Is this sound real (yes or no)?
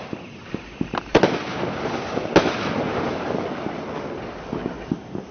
yes